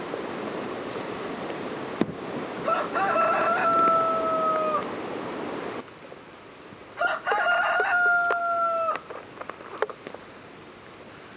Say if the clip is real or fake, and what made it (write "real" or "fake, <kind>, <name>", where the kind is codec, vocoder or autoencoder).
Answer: real